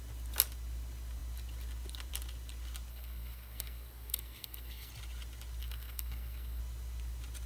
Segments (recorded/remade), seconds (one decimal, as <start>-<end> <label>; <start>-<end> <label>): 0.0-2.9 recorded; 2.9-4.9 remade; 4.9-5.6 recorded; 5.6-6.6 remade; 6.6-7.5 recorded

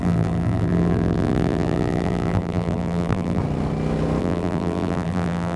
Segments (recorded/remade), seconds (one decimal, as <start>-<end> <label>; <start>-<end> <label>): 0.0-3.4 remade; 3.4-4.2 recorded; 4.2-5.6 remade

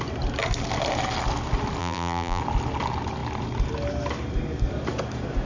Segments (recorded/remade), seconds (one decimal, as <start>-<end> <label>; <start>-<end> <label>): 0.0-1.8 recorded; 1.8-2.4 remade; 2.4-5.5 recorded

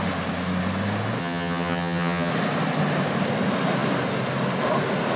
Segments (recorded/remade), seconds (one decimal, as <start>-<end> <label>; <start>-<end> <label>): 0.0-1.2 recorded; 1.2-2.3 remade; 2.3-5.2 recorded